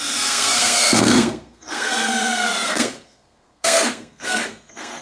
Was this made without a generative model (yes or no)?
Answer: no